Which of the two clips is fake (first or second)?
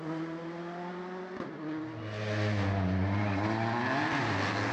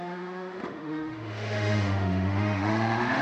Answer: second